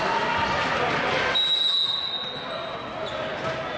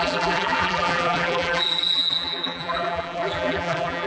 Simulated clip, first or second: second